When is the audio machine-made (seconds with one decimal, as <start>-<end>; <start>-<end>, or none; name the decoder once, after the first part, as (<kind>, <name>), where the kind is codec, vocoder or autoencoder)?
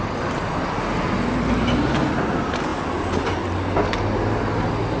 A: none